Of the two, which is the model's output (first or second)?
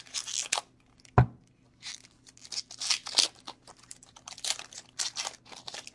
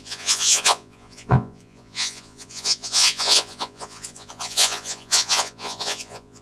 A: second